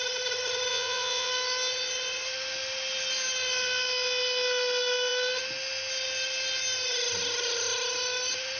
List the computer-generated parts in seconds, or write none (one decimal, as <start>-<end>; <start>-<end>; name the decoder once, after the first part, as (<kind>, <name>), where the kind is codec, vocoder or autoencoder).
0.7-1.3 (vocoder, Vocos)